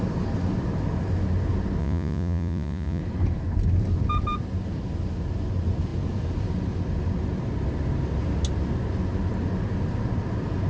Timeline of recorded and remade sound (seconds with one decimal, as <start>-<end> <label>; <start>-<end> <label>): 0.0-1.8 recorded; 1.8-3.0 remade; 3.0-10.7 recorded